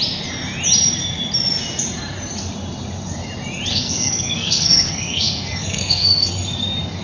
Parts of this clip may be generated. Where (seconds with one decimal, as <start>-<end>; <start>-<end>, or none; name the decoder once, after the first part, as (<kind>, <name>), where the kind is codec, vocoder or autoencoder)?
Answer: 3.7-6.3 (codec, SNAC)